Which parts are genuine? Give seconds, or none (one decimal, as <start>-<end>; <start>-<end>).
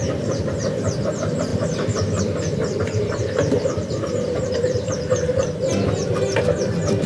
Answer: none